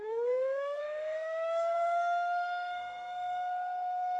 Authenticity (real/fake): fake